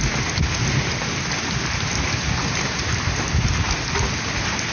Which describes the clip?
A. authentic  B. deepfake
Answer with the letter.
A